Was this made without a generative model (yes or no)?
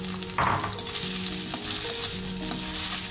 yes